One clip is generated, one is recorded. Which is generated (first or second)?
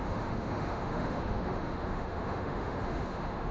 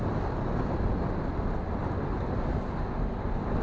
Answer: first